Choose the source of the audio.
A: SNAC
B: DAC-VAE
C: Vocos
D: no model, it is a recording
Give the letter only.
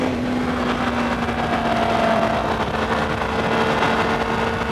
D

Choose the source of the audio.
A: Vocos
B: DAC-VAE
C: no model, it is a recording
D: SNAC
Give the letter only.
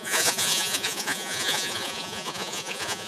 A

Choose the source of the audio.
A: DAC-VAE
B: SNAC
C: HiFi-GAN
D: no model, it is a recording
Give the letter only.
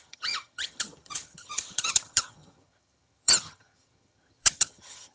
C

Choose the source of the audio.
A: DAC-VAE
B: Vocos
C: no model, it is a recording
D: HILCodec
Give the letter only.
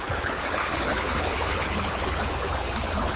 D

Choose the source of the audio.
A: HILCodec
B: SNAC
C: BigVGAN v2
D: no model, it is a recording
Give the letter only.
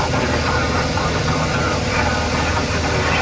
D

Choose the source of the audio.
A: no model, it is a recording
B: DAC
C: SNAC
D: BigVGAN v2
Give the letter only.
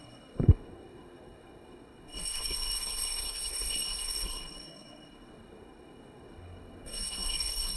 C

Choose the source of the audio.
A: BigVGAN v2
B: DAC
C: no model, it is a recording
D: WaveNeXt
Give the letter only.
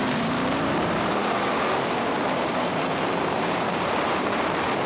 A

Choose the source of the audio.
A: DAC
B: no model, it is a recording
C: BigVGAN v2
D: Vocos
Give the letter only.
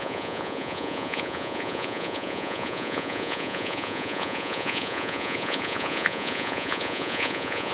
D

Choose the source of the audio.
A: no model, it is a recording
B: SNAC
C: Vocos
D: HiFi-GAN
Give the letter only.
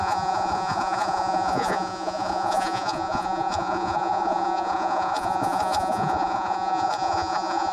C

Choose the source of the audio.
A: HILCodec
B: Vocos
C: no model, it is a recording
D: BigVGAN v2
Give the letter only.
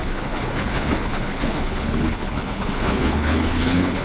A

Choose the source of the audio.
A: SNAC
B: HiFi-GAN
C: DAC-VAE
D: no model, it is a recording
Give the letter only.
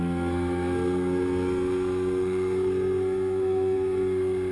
A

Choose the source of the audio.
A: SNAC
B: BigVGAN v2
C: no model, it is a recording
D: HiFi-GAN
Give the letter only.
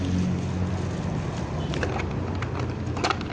C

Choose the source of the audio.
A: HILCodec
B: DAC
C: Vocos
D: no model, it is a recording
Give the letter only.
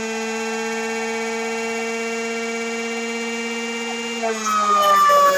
D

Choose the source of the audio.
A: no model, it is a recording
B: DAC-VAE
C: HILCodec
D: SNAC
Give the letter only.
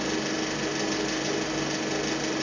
A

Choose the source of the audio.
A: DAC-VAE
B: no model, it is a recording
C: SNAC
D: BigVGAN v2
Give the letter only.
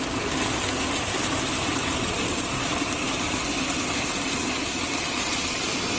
B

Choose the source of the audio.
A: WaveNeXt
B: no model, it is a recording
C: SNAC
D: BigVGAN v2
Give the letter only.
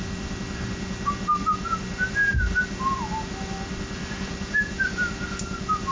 B